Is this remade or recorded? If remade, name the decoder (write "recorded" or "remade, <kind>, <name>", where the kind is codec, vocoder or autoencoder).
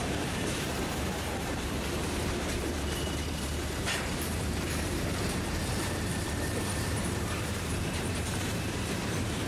remade, vocoder, BigVGAN v2